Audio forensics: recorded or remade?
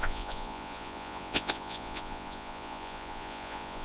remade